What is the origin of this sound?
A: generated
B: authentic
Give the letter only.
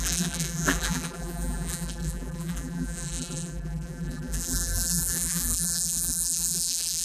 A